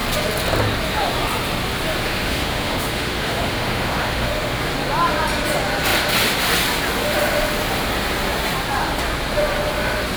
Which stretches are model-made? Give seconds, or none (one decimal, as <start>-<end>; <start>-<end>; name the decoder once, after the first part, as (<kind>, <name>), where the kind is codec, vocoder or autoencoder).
2.0-4.7 (autoencoder, DAC-VAE)